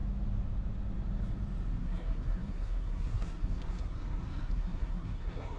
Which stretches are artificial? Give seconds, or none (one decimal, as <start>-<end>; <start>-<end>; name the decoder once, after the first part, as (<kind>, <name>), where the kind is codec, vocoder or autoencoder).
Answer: 1.8-5.6 (codec, SNAC)